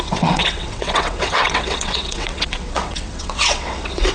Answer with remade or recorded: remade